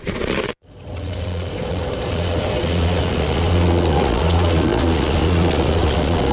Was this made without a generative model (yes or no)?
no